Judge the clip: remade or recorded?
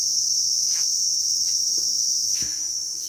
remade